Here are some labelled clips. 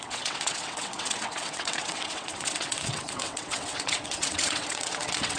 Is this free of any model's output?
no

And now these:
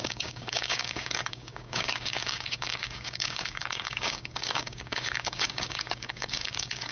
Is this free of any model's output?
no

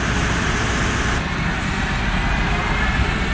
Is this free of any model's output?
yes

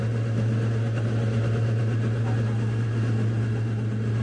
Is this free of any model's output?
yes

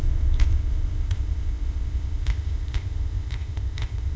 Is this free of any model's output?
no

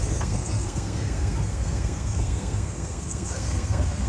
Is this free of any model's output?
no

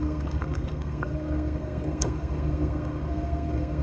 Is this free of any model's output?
no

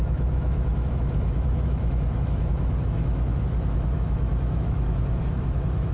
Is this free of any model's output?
no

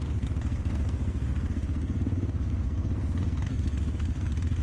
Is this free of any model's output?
no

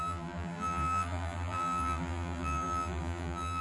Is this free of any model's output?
no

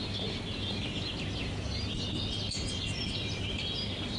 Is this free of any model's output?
yes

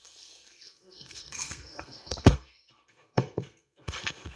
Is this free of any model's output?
no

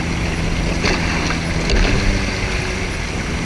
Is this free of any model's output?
yes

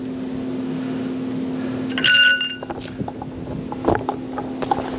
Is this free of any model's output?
yes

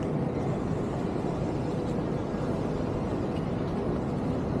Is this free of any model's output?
yes